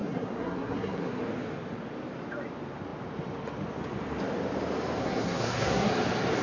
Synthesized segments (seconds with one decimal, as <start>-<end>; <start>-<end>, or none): 0.0-1.2; 5.0-5.9